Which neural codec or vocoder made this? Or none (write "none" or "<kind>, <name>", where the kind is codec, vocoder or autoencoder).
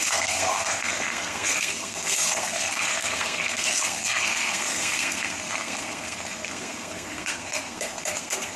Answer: codec, SNAC